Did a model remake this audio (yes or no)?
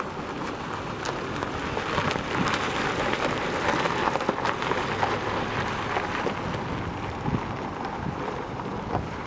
no